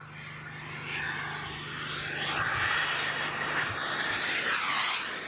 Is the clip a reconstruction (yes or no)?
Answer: no